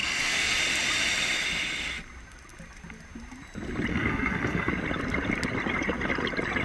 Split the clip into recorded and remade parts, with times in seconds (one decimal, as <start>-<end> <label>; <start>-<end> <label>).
0.0-0.6 remade; 0.6-3.9 recorded; 3.9-4.7 remade; 4.7-6.6 recorded